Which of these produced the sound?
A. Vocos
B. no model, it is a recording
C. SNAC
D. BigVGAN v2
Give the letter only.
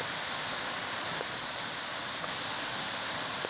D